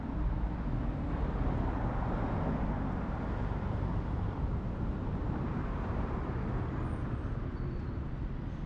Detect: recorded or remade recorded